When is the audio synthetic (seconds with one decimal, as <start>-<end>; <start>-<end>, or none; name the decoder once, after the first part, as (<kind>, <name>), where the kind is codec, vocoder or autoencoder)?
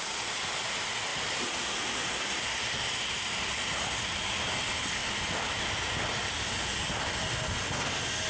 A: 1.1-4.4 (vocoder, BigVGAN v2); 5.0-5.8